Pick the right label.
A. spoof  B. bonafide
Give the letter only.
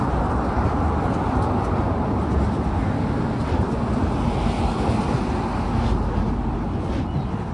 B